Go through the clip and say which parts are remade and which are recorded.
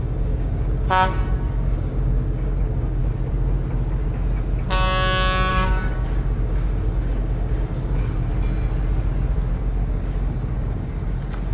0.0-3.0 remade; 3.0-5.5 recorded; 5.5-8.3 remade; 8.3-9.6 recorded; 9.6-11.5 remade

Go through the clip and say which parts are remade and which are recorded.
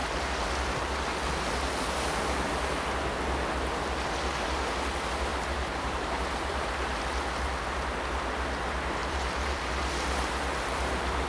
0.0-5.3 recorded; 5.3-6.7 remade; 6.7-9.0 recorded; 9.0-9.7 remade; 9.7-11.3 recorded